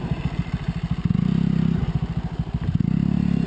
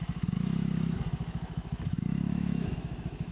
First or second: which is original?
first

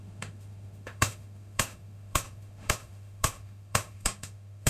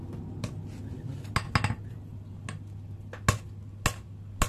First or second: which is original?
second